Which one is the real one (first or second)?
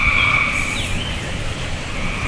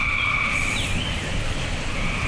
first